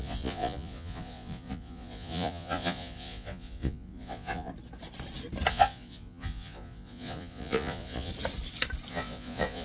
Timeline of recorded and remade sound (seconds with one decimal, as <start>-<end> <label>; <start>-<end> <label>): 0.0-4.5 remade; 4.5-5.5 recorded; 5.5-8.1 remade; 8.1-8.9 recorded; 8.9-9.6 remade